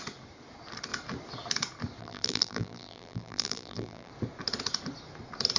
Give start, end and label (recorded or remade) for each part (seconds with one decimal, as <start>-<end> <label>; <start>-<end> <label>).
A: 0.0-2.0 recorded; 2.0-4.1 remade; 4.1-5.6 recorded